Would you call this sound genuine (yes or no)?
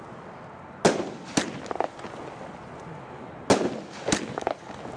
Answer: yes